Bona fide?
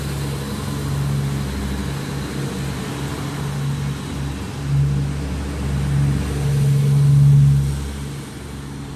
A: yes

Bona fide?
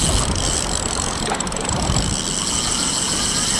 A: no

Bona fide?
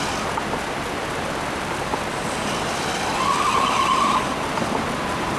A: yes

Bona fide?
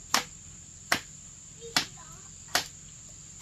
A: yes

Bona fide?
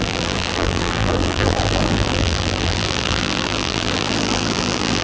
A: no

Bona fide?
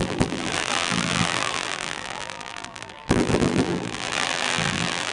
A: no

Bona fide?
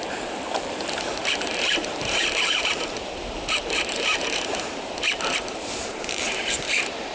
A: no